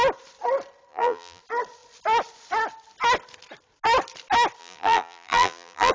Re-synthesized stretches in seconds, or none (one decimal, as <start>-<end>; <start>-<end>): 0.9-1.4; 4.6-5.9